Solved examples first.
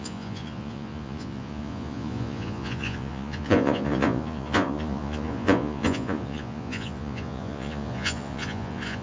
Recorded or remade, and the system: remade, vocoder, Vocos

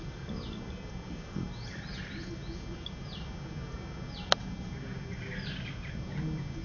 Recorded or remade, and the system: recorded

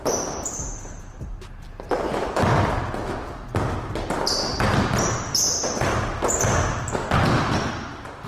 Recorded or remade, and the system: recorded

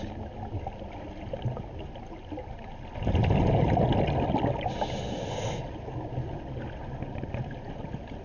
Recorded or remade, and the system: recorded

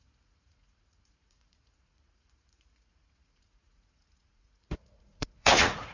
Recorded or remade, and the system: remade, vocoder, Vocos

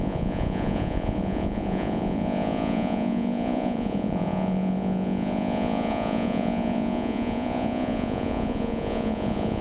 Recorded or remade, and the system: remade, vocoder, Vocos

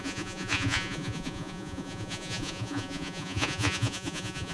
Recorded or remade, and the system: remade, vocoder, Vocos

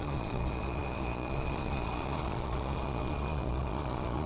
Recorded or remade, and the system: remade, vocoder, Vocos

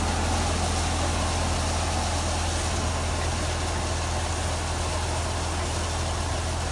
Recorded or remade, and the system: recorded